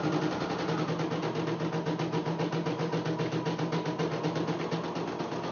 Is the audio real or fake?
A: real